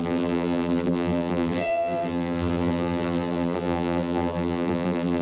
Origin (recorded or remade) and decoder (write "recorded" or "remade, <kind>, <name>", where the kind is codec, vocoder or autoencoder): remade, vocoder, BigVGAN v2